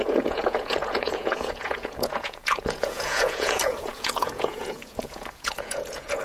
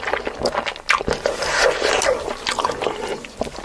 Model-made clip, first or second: first